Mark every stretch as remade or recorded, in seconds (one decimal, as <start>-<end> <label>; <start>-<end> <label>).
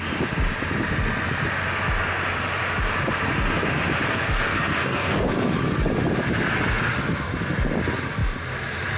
0.0-4.1 recorded; 4.1-5.3 remade; 5.3-9.0 recorded